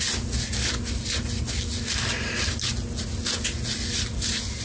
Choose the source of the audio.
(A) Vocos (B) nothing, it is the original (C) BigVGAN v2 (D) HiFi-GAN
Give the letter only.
B